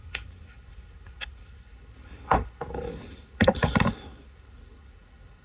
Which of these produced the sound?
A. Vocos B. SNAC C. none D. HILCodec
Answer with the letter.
D